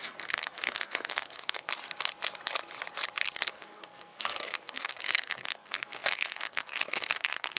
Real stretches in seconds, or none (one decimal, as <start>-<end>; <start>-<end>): 1.7-3.5